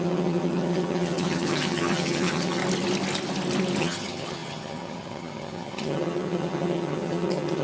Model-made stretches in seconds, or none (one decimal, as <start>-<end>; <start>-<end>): 0.0-2.6; 3.8-7.6